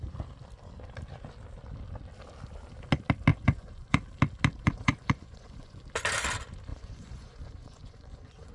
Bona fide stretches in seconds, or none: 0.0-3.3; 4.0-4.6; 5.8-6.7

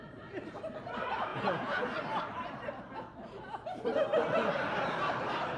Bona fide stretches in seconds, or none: 0.0-1.3; 1.8-5.6

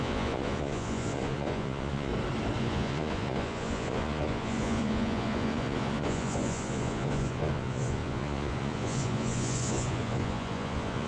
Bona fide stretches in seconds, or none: 2.1-2.6

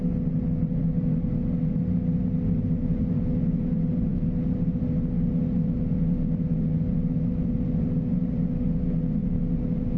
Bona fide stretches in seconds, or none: 0.0-10.0

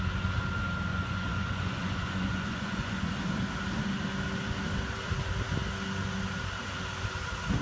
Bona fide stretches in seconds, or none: 0.0-0.9; 3.1-7.6